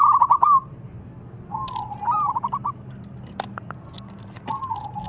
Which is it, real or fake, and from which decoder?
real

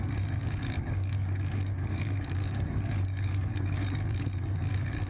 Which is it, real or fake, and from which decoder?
fake, codec, DAC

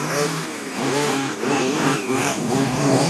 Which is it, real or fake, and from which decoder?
fake, codec, DAC